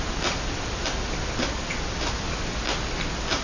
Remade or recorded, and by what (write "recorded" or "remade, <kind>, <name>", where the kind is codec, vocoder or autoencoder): recorded